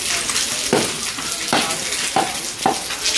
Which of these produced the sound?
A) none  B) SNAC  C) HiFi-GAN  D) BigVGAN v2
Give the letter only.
A